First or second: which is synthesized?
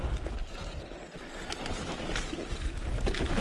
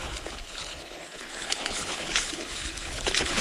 second